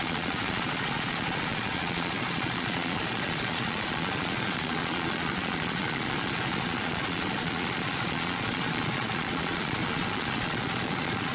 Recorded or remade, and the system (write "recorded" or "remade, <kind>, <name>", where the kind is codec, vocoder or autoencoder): remade, vocoder, Vocos